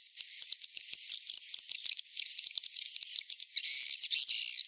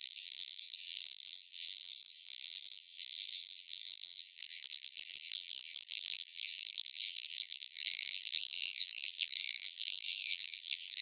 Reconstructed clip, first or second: second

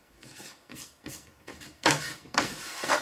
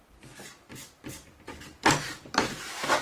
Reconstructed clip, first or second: first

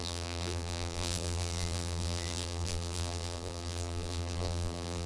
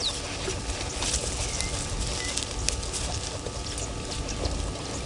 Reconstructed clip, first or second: first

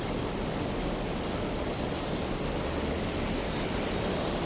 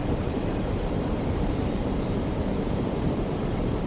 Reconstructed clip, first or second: second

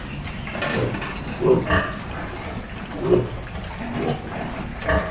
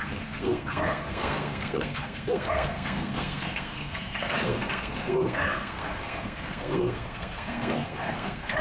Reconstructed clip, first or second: second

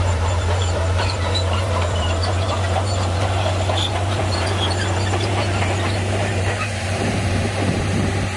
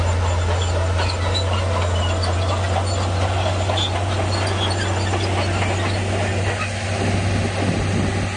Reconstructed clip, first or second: first